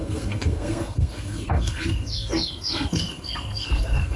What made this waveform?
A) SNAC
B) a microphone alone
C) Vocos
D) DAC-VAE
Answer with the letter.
A